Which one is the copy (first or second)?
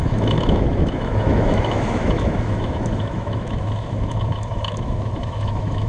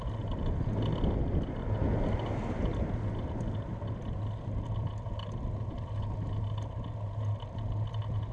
first